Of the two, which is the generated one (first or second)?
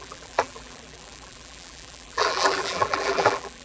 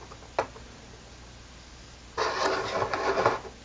first